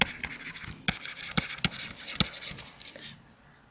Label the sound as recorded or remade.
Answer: recorded